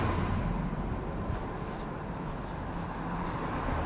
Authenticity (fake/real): real